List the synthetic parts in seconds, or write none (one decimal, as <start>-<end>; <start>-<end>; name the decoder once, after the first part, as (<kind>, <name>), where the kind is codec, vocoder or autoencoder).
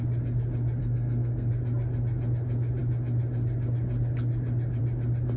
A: 0.8-1.5 (codec, SNAC)